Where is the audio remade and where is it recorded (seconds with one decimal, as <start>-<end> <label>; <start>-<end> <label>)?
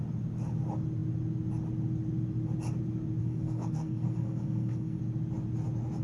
0.0-3.2 recorded; 3.2-5.0 remade; 5.0-6.0 recorded